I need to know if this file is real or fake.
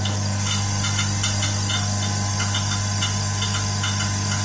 real